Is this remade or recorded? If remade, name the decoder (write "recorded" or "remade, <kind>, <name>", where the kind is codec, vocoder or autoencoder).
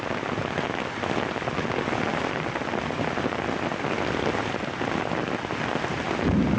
recorded